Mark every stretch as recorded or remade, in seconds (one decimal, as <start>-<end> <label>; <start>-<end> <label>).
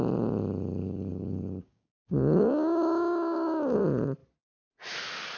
0.0-0.8 recorded; 0.8-3.8 remade; 3.8-5.4 recorded